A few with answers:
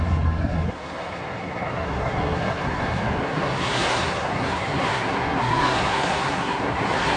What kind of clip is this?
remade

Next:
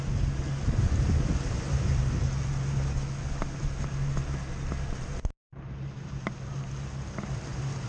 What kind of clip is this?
recorded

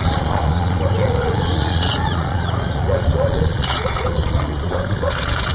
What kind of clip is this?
remade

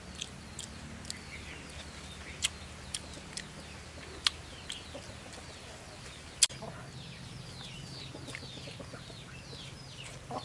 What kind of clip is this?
recorded